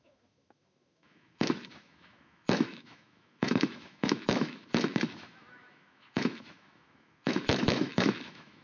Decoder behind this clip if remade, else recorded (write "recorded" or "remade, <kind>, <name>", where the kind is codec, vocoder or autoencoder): remade, autoencoder, DAC-VAE